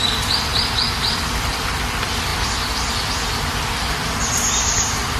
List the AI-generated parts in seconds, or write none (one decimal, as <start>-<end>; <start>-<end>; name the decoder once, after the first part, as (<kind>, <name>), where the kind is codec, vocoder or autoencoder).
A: 0.0-0.5 (vocoder, BigVGAN v2); 1.1-5.2